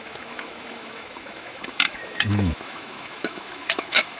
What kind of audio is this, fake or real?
fake